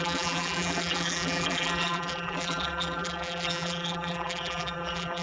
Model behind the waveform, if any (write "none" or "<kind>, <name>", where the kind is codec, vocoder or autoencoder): vocoder, BigVGAN v2